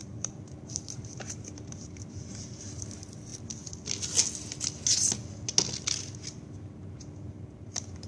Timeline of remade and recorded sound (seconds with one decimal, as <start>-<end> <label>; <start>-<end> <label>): 0.0-3.3 remade; 3.3-6.5 recorded; 6.5-8.1 remade